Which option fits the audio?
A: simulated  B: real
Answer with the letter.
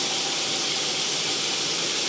B